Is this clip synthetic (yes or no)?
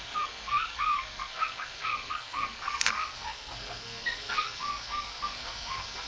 yes